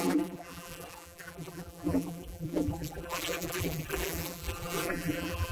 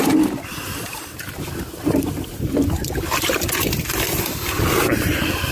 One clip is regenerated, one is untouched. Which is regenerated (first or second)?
first